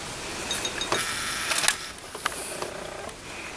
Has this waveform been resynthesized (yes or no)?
no